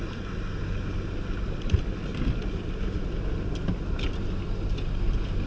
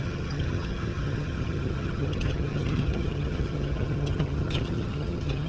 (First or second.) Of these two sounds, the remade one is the second